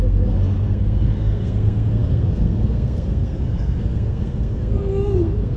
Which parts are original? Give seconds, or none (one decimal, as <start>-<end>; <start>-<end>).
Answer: none